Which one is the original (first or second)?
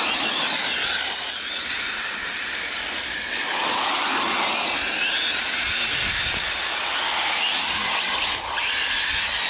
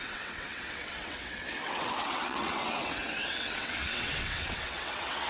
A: first